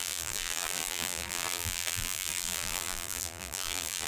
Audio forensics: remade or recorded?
remade